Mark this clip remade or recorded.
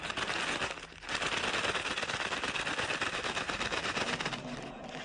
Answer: recorded